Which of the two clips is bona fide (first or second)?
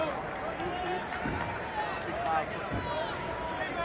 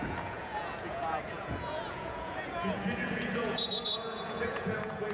first